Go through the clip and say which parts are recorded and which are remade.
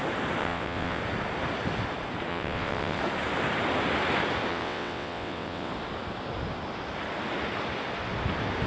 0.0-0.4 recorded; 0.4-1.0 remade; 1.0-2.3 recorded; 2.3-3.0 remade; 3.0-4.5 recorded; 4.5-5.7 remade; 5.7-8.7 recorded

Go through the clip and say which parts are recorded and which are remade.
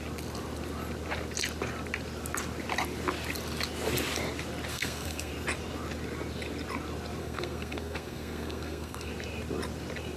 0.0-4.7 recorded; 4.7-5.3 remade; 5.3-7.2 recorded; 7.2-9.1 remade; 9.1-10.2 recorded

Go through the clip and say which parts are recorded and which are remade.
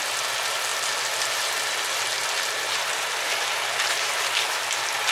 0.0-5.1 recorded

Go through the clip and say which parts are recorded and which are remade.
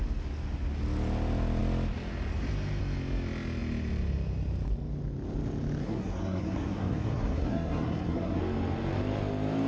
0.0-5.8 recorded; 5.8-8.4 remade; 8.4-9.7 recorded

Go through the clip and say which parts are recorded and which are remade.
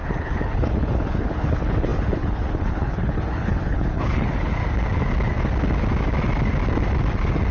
0.0-4.5 remade; 4.5-7.5 recorded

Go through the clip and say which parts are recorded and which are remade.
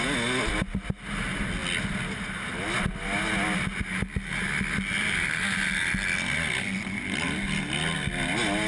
0.0-8.7 recorded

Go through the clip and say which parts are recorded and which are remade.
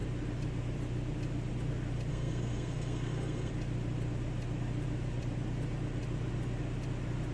0.0-2.1 recorded; 2.1-3.5 remade; 3.5-7.3 recorded